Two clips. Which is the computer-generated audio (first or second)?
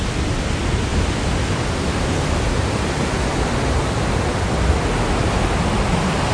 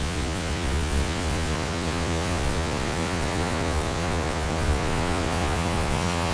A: second